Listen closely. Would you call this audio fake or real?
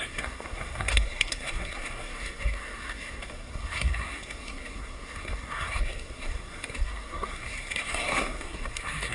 fake